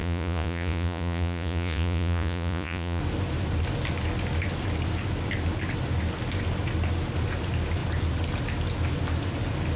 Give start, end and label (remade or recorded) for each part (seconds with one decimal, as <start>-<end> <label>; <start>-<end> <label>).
0.0-3.0 remade; 3.0-9.8 recorded